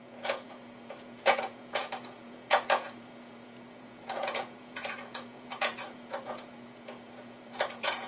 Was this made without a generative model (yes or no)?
no